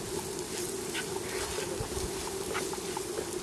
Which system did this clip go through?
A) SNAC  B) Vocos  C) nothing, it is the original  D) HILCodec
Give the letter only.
C